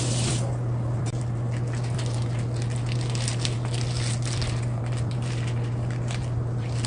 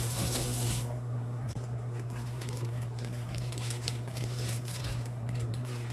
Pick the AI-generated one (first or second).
second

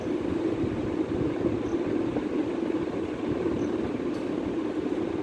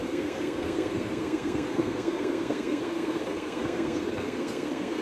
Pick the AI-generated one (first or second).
second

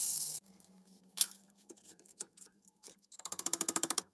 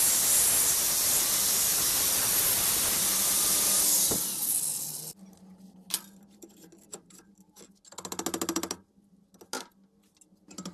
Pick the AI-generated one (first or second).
first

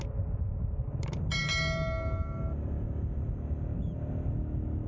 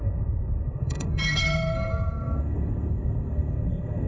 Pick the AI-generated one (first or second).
second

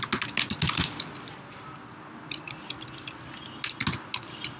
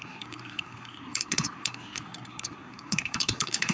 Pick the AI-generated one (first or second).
second